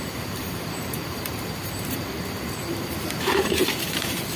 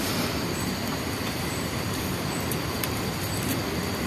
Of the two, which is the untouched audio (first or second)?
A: second